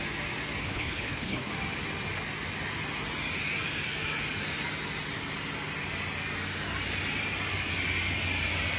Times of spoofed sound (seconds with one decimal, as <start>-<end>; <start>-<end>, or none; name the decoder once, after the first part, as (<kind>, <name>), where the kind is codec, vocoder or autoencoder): 0.6-1.5 (codec, HILCodec)